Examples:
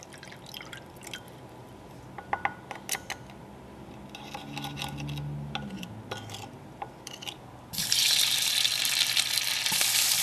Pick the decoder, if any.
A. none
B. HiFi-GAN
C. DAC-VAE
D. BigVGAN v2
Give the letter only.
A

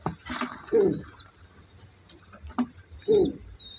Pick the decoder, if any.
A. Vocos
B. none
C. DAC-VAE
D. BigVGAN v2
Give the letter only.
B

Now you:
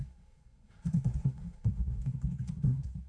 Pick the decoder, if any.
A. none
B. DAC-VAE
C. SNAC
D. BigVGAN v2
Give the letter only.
C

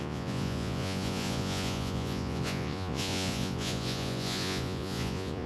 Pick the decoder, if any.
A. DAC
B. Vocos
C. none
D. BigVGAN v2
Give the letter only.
B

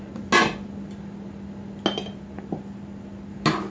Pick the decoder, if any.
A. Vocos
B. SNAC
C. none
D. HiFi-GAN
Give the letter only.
C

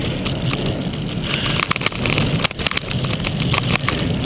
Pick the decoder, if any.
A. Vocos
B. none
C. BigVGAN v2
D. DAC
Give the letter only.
B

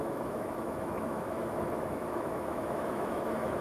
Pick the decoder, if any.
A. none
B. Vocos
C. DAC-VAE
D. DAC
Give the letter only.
C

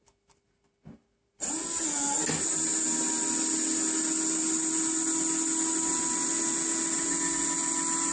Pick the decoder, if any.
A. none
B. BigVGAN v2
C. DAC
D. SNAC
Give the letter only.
A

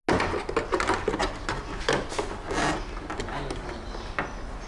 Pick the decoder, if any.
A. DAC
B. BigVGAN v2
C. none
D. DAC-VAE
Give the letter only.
C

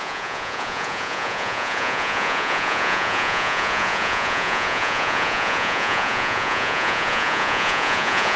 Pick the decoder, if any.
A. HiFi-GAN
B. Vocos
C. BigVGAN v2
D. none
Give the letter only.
B